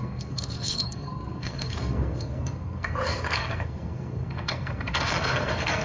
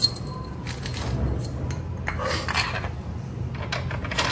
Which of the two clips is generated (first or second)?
first